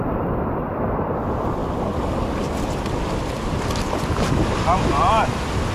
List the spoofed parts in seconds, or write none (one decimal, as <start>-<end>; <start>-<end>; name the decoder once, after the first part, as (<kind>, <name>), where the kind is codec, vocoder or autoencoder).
none